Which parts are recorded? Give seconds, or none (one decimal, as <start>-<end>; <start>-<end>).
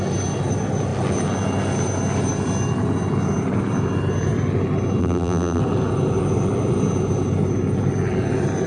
0.0-5.0; 5.6-8.7